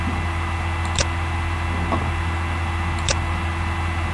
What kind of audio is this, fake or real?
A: real